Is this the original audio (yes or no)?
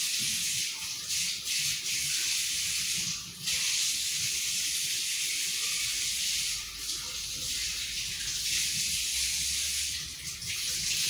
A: yes